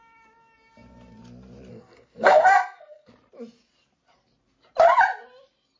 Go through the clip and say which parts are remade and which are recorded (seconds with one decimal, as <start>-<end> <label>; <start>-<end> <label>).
0.0-1.7 recorded; 1.7-3.1 remade; 3.1-5.8 recorded